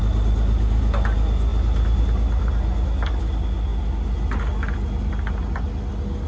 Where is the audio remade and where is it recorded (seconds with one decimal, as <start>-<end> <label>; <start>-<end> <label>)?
0.0-6.3 recorded